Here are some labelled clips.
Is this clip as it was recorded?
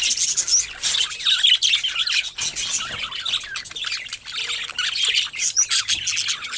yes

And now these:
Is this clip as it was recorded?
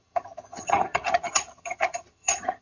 no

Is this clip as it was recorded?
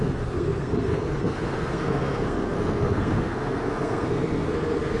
no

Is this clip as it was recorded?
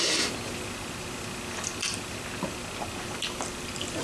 yes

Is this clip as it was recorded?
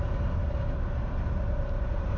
yes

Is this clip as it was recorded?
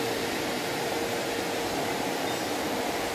yes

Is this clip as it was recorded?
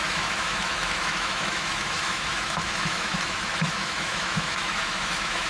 no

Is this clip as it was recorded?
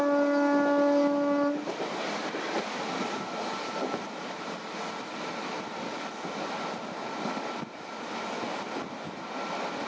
yes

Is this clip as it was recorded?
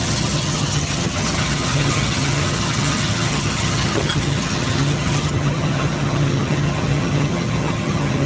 no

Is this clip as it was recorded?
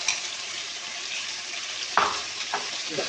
no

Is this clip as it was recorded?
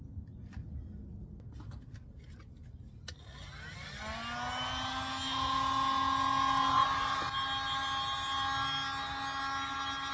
yes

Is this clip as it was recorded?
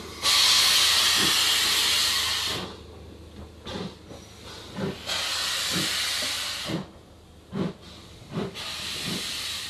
yes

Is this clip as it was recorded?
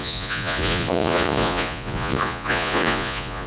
no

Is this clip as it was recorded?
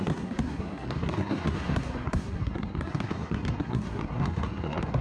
no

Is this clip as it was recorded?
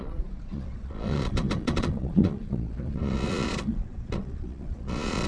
no